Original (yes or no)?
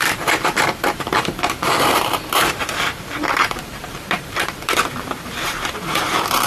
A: no